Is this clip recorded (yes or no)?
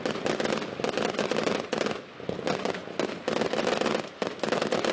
yes